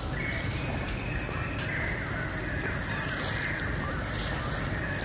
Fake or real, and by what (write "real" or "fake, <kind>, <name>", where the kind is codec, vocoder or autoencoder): real